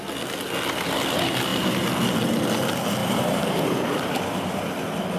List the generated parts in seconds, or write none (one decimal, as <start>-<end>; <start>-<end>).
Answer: 3.0-4.8